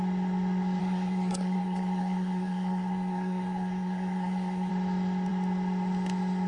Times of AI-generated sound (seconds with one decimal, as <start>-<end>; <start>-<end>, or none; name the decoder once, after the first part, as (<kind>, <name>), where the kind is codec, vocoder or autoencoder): 0.8-4.7 (codec, SNAC)